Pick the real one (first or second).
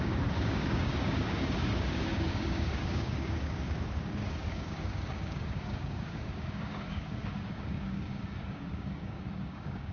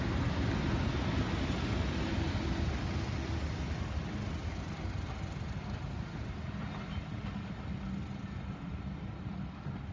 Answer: second